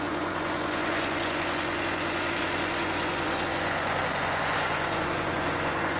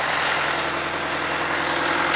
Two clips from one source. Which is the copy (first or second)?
first